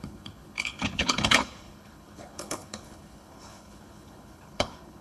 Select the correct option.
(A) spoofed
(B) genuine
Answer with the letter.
A